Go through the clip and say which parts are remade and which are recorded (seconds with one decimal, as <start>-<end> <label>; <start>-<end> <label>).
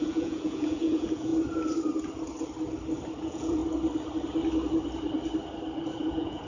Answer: 0.0-1.3 remade; 1.3-3.2 recorded; 3.2-3.6 remade; 3.6-6.0 recorded; 6.0-6.5 remade